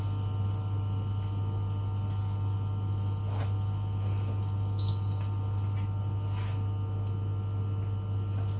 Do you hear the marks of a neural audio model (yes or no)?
no